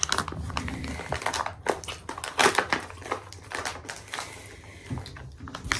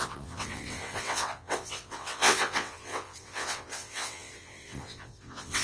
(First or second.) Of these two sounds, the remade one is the second